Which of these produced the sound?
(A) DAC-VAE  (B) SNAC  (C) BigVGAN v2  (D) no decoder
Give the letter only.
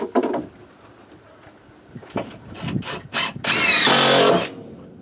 D